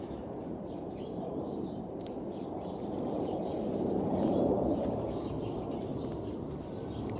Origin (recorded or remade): remade